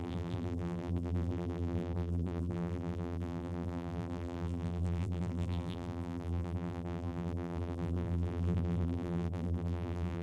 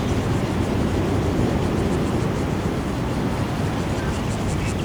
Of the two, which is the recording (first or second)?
second